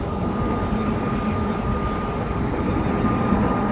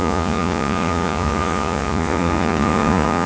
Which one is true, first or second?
first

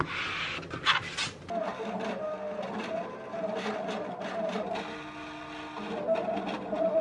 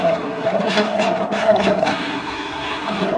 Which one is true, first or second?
first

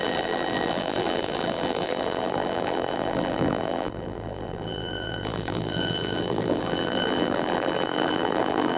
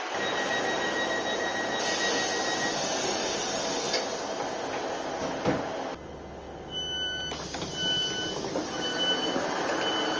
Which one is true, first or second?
second